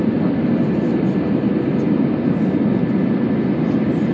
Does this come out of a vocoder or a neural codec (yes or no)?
no